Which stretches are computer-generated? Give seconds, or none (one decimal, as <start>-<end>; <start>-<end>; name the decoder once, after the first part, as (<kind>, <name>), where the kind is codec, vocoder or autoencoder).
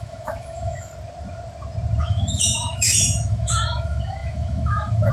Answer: 0.0-0.9 (autoencoder, DAC-VAE); 2.0-5.1